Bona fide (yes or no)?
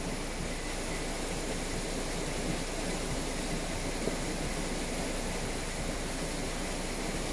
yes